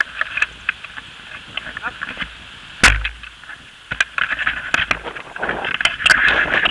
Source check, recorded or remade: recorded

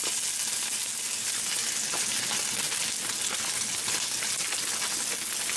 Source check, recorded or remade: recorded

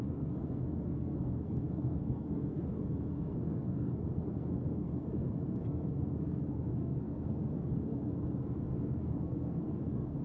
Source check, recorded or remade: remade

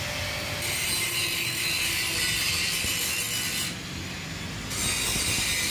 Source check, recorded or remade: recorded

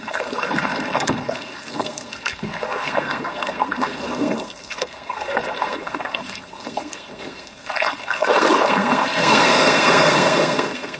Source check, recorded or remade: remade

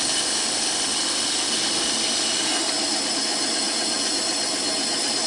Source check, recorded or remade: recorded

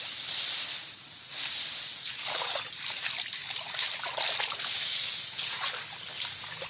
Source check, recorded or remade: recorded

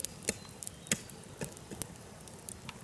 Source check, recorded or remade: recorded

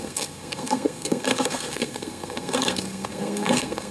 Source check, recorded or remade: remade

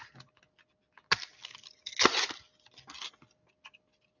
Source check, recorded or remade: recorded